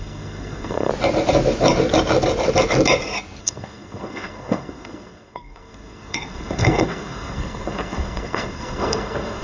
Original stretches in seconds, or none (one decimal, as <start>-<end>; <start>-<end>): 0.9-3.4